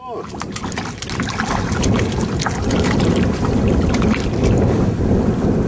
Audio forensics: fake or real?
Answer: real